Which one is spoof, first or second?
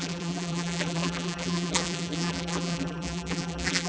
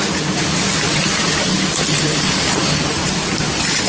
first